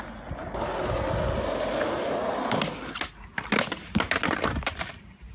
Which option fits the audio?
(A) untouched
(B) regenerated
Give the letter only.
A